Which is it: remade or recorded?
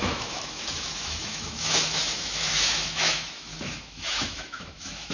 remade